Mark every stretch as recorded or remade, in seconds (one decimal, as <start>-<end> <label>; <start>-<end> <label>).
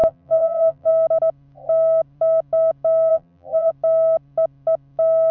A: 0.0-0.9 remade; 0.9-3.1 recorded; 3.1-3.7 remade; 3.7-5.3 recorded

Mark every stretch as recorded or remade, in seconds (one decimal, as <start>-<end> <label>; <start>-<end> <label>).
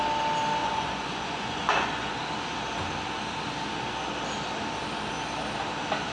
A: 0.0-0.6 recorded; 0.6-2.1 remade; 2.1-6.1 recorded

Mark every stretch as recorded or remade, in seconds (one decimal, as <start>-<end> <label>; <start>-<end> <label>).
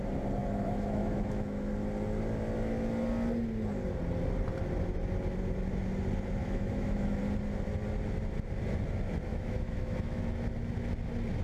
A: 0.0-0.4 recorded; 0.4-1.7 remade; 1.7-6.4 recorded; 6.4-7.2 remade; 7.2-9.3 recorded; 9.3-10.2 remade; 10.2-11.4 recorded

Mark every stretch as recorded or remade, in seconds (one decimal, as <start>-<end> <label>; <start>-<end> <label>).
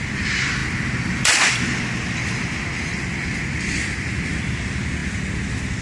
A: 0.0-5.8 recorded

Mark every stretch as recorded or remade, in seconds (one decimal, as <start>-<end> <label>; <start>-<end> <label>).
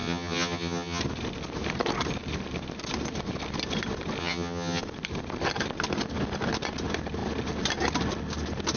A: 0.0-1.0 remade; 1.0-4.2 recorded; 4.2-4.8 remade; 4.8-8.8 recorded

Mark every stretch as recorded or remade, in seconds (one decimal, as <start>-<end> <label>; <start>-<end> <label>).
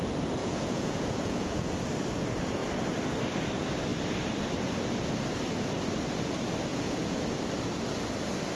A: 0.0-0.4 recorded; 0.4-1.7 remade; 1.7-6.7 recorded; 6.7-7.2 remade; 7.2-8.6 recorded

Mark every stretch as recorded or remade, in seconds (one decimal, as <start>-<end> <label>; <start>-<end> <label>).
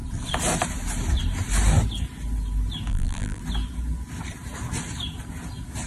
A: 0.0-2.9 recorded; 2.9-3.4 remade; 3.4-5.9 recorded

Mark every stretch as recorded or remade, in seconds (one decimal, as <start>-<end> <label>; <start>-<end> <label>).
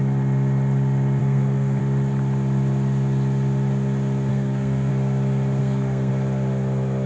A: 0.0-1.2 recorded; 1.2-1.8 remade; 1.8-4.3 recorded; 4.3-4.9 remade; 4.9-5.6 recorded; 5.6-6.1 remade; 6.1-7.1 recorded